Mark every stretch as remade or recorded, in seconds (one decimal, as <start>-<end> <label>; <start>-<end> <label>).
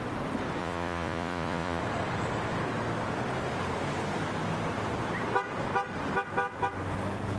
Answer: 0.0-0.6 recorded; 0.6-1.8 remade; 1.8-7.4 recorded